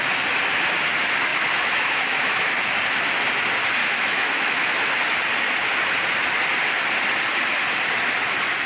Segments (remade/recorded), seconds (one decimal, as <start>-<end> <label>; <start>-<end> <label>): 0.0-1.3 recorded; 1.3-2.8 remade; 2.8-3.8 recorded; 3.8-5.0 remade; 5.0-8.7 recorded